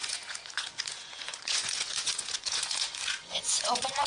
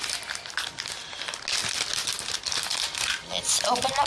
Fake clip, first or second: first